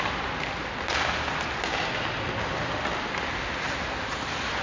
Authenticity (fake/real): real